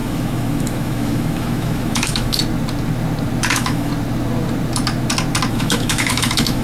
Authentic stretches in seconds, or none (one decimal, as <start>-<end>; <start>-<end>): 2.4-3.5; 3.9-5.5